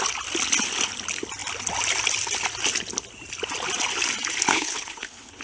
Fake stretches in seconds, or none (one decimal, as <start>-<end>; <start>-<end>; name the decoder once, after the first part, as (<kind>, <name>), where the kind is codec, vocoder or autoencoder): 4.5-5.4 (codec, HILCodec)